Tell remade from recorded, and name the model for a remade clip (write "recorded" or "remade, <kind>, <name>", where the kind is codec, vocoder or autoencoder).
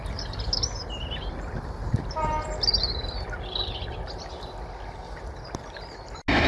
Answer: recorded